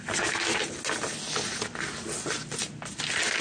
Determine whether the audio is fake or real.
real